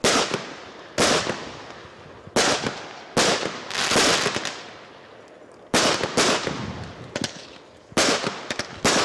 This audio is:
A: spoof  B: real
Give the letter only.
B